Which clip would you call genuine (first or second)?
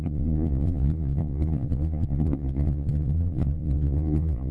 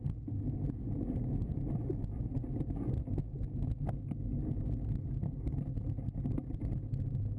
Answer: second